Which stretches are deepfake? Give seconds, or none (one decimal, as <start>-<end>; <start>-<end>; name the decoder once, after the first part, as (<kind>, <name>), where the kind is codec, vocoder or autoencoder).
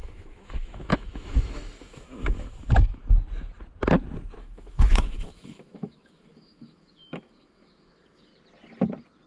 0.0-3.0 (autoencoder, DAC-VAE); 4.4-8.3